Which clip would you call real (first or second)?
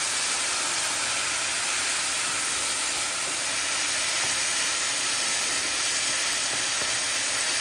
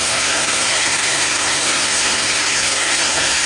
first